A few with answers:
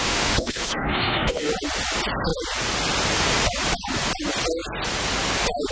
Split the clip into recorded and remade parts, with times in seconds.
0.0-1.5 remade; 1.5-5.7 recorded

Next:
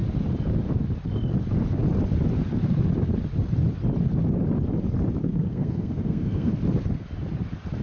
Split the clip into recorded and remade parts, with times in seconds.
0.0-5.2 recorded; 5.2-6.5 remade; 6.5-7.8 recorded